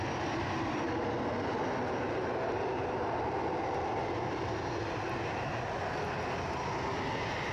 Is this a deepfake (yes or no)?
no